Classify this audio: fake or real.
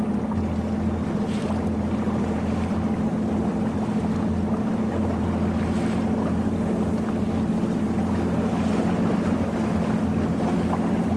real